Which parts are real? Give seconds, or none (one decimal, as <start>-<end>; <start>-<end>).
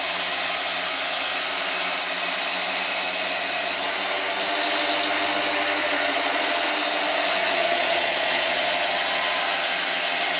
0.0-5.8; 6.7-7.6; 8.5-10.4